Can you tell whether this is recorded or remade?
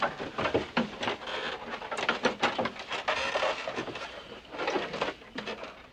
recorded